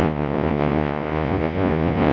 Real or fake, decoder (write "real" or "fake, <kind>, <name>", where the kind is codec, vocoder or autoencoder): fake, vocoder, Vocos